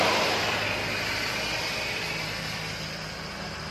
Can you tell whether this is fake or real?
real